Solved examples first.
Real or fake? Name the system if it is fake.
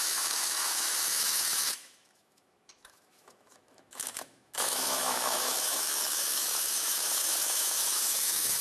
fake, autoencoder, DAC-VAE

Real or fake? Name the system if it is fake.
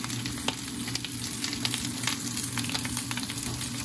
real